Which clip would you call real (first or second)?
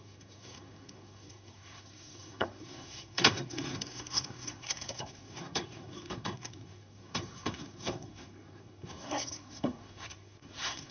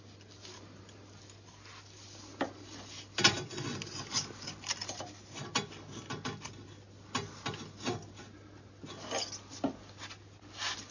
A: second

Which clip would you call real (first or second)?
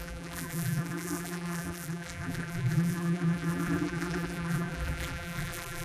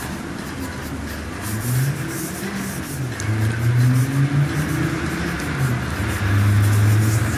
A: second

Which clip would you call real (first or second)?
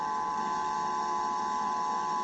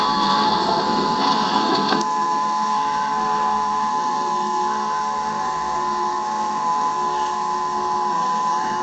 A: first